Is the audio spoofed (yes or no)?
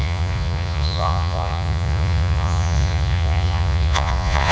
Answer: yes